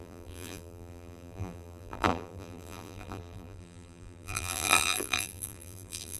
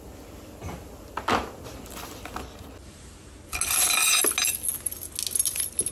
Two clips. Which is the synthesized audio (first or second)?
first